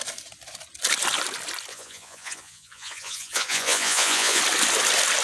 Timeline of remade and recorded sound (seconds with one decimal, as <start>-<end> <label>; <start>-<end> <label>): 0.0-1.7 recorded; 1.7-4.4 remade; 4.4-5.2 recorded